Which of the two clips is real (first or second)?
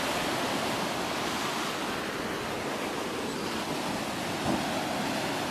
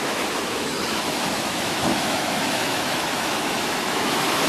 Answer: first